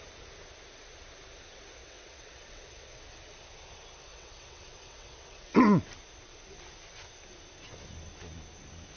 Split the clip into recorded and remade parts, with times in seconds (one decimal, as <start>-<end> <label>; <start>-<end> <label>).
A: 0.0-1.8 recorded; 1.8-3.0 remade; 3.0-4.1 recorded; 4.1-5.9 remade; 5.9-9.0 recorded